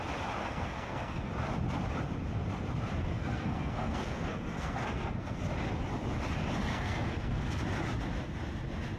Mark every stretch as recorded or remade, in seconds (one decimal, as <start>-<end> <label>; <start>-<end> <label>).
0.0-0.4 recorded; 0.4-1.3 remade; 1.3-3.0 recorded; 3.0-5.4 remade; 5.4-6.7 recorded; 6.7-7.6 remade; 7.6-9.0 recorded